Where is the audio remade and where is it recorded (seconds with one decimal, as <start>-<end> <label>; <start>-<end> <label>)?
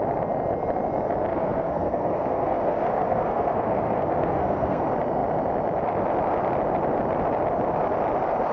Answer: 0.0-1.3 recorded; 1.3-4.8 remade; 4.8-8.5 recorded